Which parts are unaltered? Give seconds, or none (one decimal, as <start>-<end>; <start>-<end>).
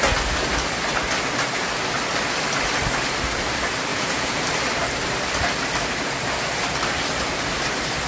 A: 0.0-3.9; 4.4-8.1